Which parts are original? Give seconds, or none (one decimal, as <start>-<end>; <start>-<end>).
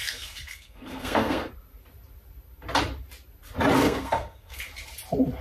1.5-3.8; 4.6-5.4